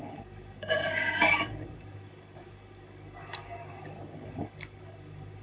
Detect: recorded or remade remade